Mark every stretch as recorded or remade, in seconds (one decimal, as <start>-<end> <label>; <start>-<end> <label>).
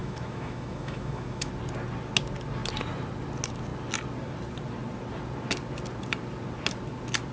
0.0-1.5 remade; 1.5-7.3 recorded